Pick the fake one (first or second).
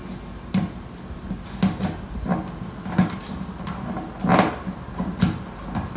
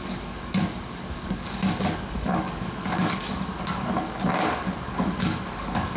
second